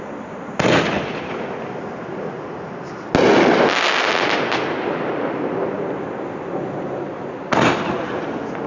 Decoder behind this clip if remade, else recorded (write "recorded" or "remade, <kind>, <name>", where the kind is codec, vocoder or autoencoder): recorded